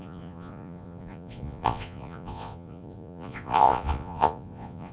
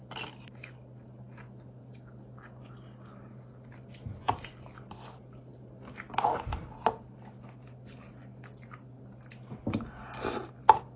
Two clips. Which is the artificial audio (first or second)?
first